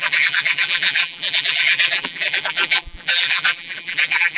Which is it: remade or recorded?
remade